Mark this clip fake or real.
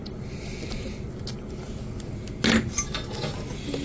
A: real